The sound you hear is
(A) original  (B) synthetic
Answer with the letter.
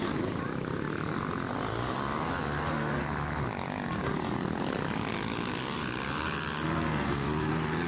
A